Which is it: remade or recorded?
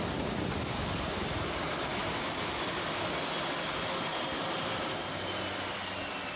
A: recorded